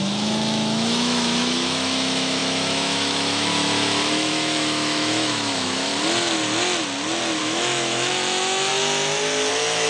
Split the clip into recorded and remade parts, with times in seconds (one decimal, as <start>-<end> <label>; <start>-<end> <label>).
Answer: 0.0-5.9 remade; 5.9-7.4 recorded; 7.4-8.7 remade; 8.7-9.5 recorded; 9.5-9.9 remade